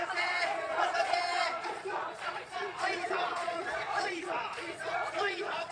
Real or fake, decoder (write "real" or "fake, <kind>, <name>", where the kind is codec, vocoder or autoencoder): fake, vocoder, Vocos